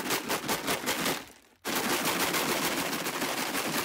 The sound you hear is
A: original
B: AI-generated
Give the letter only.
A